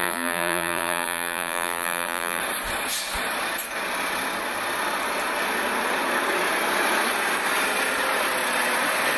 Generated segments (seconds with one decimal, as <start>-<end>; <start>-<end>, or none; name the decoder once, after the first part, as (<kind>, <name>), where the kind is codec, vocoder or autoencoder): 0.0-2.4 (vocoder, BigVGAN v2)